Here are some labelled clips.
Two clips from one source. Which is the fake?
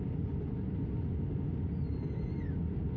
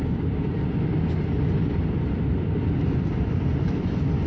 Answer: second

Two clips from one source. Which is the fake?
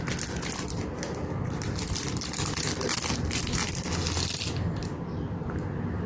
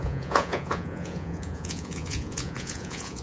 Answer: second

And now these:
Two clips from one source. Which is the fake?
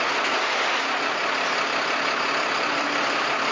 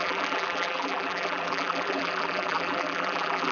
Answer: second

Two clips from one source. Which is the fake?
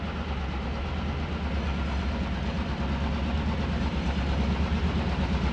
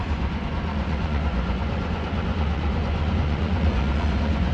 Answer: second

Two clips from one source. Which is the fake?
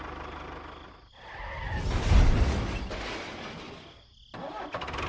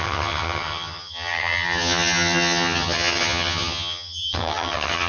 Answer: second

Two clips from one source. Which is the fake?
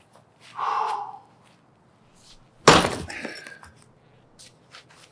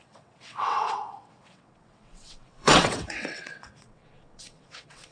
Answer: second